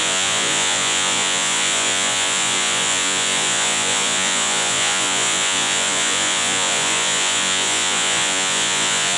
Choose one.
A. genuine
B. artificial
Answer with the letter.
B